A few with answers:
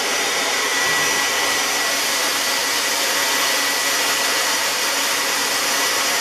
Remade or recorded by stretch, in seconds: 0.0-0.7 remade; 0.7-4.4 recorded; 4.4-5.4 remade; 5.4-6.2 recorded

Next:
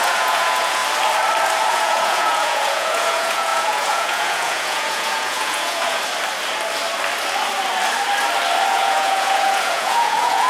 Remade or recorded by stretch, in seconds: 0.0-0.8 remade; 0.8-1.7 recorded; 1.7-6.0 remade; 6.0-8.7 recorded; 8.7-10.5 remade

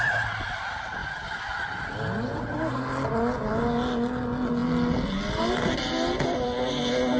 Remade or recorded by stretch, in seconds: 0.0-7.2 recorded

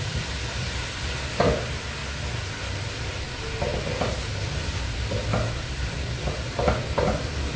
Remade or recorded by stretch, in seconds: 0.0-2.0 remade; 2.0-4.3 recorded; 4.3-7.6 remade